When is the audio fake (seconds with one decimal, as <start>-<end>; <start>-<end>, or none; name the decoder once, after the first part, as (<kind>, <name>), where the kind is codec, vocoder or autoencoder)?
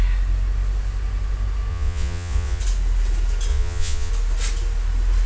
1.7-2.6 (vocoder, Vocos); 3.5-4.1